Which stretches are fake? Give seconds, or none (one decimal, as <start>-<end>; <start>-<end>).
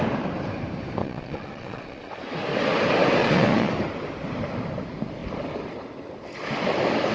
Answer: 1.0-2.1; 3.2-3.7